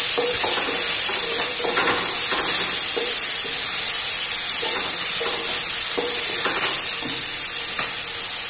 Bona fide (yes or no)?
yes